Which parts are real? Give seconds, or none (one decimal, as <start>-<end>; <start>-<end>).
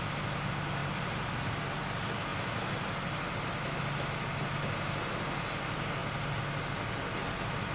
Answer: 0.0-0.8; 1.6-7.7